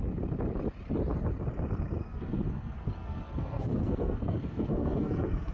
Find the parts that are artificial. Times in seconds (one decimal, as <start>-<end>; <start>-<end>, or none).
2.0-5.5

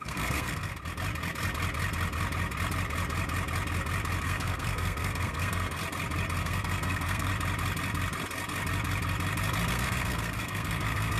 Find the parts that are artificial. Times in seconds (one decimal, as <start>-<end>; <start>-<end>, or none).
0.0-0.7; 4.2-5.8; 6.4-7.3; 9.7-11.2

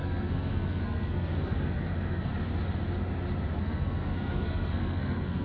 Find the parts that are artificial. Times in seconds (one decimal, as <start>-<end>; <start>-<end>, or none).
0.0-2.3; 3.6-5.4

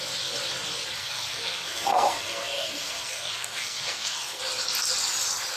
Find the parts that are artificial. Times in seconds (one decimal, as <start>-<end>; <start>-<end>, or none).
1.0-4.4

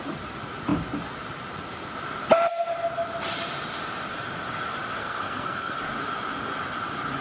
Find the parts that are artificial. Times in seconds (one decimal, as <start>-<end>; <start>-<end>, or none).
5.0-5.8

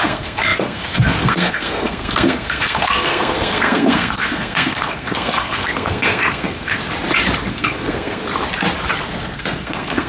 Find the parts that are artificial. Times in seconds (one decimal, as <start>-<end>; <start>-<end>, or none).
0.0-6.8; 7.5-8.2; 9.0-10.1

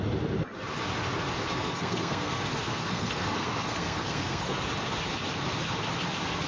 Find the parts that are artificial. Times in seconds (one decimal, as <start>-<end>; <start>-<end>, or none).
1.5-4.6